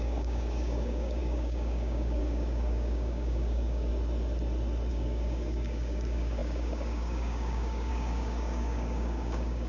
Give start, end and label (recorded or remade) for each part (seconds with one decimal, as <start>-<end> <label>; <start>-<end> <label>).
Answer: 0.0-3.9 remade; 3.9-4.9 recorded; 4.9-9.7 remade